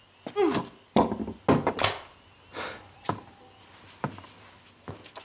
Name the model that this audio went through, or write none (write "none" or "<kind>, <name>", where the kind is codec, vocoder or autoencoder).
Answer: none